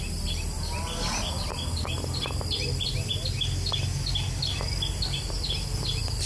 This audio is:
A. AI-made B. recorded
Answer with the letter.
B